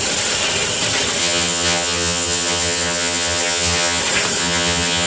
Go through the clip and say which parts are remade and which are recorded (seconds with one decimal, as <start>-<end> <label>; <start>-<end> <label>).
0.0-1.2 recorded; 1.2-4.0 remade; 4.0-4.4 recorded; 4.4-5.1 remade